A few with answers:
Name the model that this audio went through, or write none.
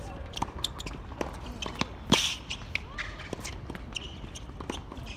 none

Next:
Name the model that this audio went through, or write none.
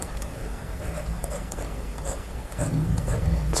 codec, SNAC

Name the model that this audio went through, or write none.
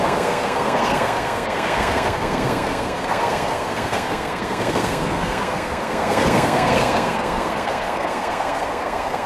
codec, SNAC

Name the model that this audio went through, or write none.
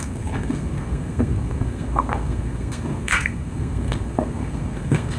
codec, SNAC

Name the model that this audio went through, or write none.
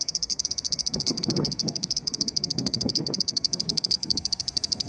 codec, SNAC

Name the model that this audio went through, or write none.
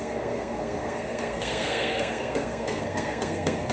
codec, SNAC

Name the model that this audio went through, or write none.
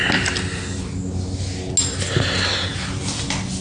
none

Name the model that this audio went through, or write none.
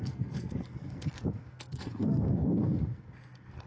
codec, SNAC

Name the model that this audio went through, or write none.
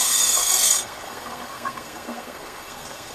codec, SNAC